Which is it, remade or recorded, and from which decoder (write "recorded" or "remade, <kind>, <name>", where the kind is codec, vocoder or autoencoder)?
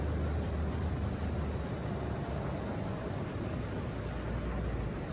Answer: recorded